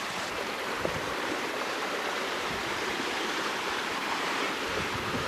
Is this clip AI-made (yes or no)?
yes